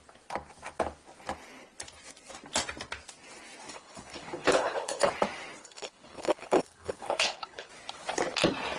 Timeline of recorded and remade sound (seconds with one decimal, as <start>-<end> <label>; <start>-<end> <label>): 0.0-3.7 recorded; 3.7-5.1 remade; 5.1-5.6 recorded; 5.6-7.7 remade; 7.7-8.8 recorded